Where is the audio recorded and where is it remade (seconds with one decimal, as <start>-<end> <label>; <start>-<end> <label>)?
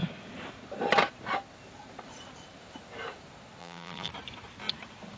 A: 0.0-3.6 recorded; 3.6-4.1 remade; 4.1-5.2 recorded